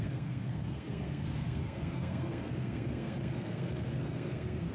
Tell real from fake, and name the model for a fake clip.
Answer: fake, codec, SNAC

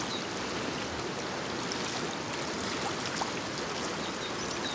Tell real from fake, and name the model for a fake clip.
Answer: real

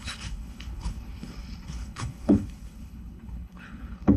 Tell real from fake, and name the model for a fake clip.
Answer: fake, codec, HILCodec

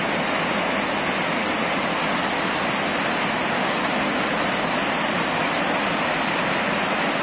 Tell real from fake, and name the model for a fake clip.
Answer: real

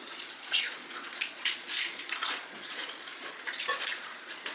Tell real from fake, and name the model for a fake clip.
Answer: fake, vocoder, Vocos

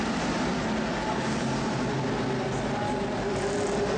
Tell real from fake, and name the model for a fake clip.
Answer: real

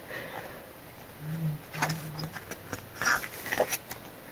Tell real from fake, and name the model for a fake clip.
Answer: real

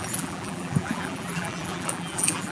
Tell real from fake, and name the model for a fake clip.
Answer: fake, vocoder, BigVGAN v2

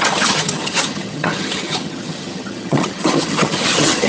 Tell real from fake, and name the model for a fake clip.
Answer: fake, vocoder, HiFi-GAN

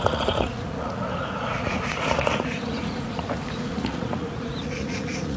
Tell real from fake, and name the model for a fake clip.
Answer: fake, vocoder, Vocos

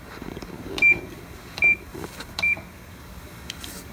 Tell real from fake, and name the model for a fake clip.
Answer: fake, codec, DAC